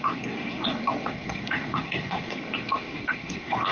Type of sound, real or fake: fake